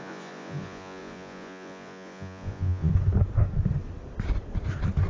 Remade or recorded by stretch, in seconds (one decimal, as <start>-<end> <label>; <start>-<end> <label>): 0.0-2.9 remade; 2.9-5.1 recorded